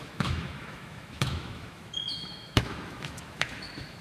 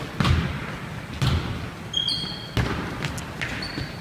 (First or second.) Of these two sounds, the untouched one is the second